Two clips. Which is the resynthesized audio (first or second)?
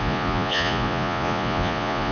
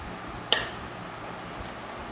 first